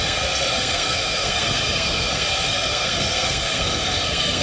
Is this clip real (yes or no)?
no